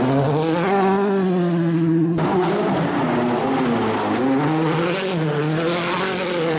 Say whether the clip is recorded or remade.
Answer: recorded